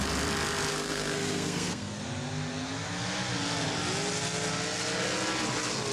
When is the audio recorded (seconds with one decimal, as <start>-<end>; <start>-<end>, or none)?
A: 0.0-0.7; 2.0-5.9